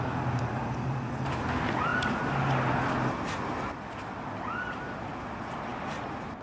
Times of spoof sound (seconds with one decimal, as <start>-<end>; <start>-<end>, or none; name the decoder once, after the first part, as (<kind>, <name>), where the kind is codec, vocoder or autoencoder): none